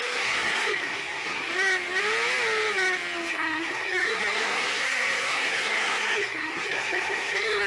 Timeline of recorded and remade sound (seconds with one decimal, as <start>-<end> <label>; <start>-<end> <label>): 0.0-1.5 remade; 1.5-3.3 recorded; 3.3-7.7 remade